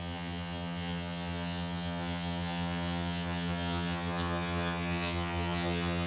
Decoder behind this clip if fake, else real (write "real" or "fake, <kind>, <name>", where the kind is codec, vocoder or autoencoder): fake, vocoder, HiFi-GAN